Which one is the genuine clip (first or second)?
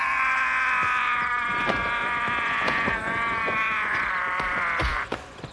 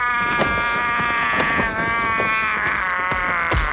second